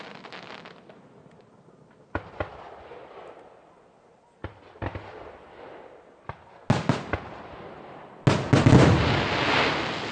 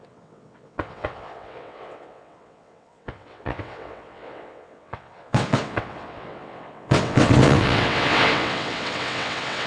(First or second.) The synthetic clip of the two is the second